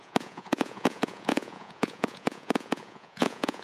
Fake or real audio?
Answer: fake